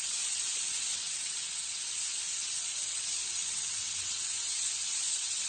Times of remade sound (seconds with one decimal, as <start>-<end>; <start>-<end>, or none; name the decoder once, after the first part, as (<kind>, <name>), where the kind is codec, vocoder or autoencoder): 0.0-5.5 (vocoder, WaveNeXt)